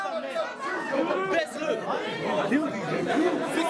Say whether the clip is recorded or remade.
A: recorded